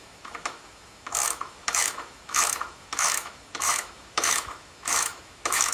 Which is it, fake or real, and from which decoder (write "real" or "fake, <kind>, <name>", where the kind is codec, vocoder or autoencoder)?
fake, autoencoder, DAC-VAE